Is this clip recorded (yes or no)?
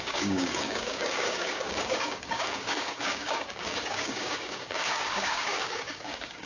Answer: no